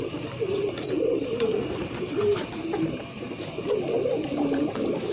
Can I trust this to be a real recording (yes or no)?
no